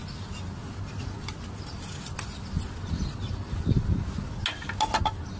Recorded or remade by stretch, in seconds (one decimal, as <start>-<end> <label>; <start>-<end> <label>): 0.0-5.4 recorded